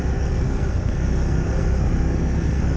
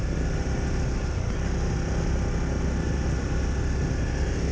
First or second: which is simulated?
first